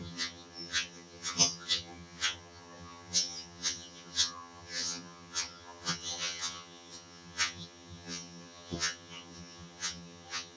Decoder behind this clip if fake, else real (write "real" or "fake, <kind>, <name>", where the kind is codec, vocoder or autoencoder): fake, vocoder, HiFi-GAN